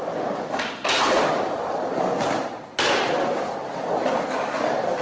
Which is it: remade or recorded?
recorded